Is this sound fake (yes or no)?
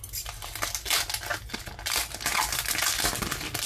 no